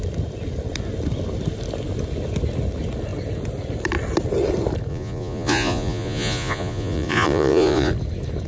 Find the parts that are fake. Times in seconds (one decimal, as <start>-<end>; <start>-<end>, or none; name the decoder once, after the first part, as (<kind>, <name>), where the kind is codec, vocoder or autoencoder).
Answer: 4.9-7.9 (vocoder, Vocos)